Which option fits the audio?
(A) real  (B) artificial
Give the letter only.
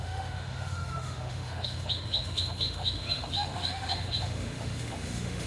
B